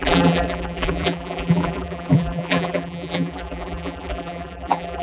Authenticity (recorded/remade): remade